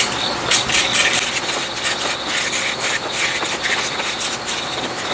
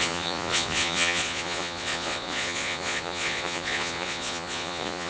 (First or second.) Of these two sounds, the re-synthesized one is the second